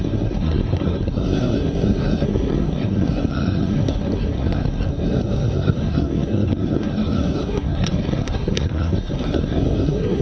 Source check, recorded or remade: remade